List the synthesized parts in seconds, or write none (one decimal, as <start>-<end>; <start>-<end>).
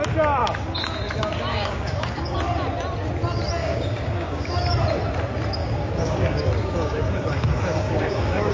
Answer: 0.4-1.0; 1.5-2.4; 3.6-4.5; 5.6-8.5